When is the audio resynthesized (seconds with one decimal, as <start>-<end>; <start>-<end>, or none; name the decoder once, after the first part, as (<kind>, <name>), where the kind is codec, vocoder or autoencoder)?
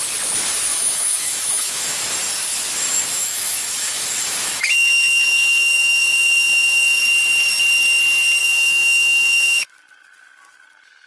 0.7-2.1 (autoencoder, DAC-VAE); 2.9-7.0; 8.4-9.7